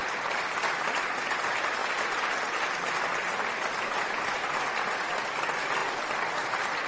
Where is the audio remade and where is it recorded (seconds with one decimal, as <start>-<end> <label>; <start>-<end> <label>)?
0.0-6.9 recorded

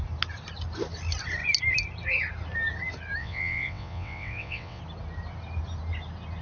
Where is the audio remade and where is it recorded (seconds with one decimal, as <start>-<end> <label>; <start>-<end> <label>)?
0.0-3.2 recorded; 3.2-4.8 remade; 4.8-6.4 recorded

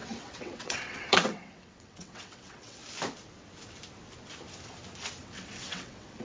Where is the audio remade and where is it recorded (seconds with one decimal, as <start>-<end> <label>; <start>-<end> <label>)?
0.0-2.8 remade; 2.8-5.2 recorded; 5.2-6.2 remade

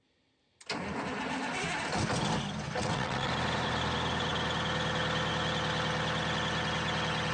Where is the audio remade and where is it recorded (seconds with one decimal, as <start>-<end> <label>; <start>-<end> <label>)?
0.0-2.8 recorded; 2.8-3.3 remade; 3.3-7.3 recorded